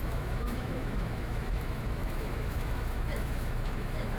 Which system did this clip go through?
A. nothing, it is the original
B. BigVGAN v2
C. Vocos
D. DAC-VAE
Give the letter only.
D